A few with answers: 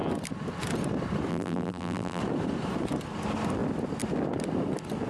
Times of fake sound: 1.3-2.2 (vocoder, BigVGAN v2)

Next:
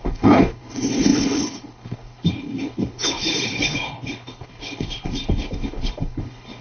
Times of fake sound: 0.0-6.6 (codec, HILCodec)

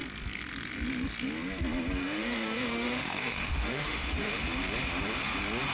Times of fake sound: 2.0-4.3 (autoencoder, DAC-VAE)